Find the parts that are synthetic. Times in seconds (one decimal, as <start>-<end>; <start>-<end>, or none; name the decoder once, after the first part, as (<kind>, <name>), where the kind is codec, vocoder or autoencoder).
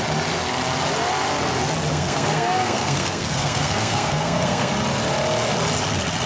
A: 1.9-4.7 (codec, SNAC)